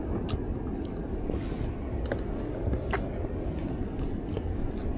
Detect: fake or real real